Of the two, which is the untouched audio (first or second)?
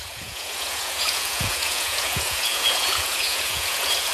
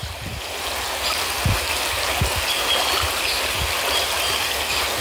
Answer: second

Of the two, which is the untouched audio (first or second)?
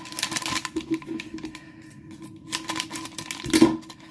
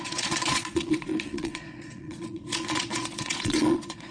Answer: first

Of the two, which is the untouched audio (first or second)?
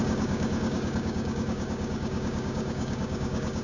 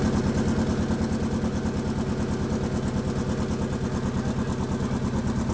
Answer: second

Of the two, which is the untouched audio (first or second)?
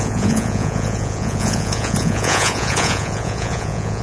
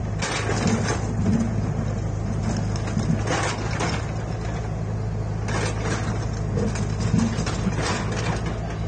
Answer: second